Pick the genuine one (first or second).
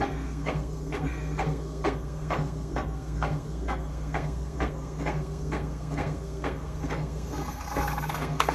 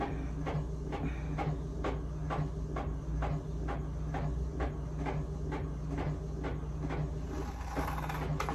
second